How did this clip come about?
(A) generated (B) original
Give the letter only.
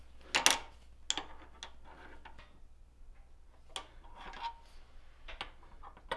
B